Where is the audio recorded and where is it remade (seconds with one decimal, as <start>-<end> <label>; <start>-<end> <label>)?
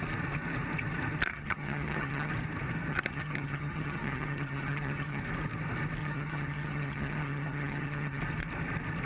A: 0.0-1.3 recorded; 1.3-2.3 remade; 2.3-2.9 recorded; 2.9-5.2 remade; 5.2-6.0 recorded; 6.0-8.2 remade; 8.2-9.1 recorded